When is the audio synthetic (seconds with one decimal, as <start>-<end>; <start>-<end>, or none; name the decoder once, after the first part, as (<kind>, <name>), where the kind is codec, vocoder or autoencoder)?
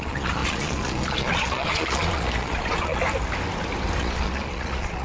0.0-3.0 (vocoder, Vocos); 4.0-5.0